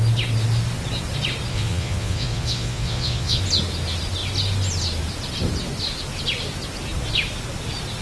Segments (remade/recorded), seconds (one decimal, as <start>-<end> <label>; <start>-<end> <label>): 0.0-1.5 recorded; 1.5-3.4 remade; 3.4-8.0 recorded